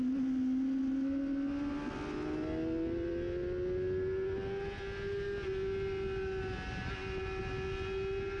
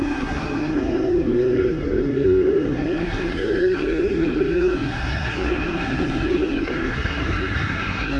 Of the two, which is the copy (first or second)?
second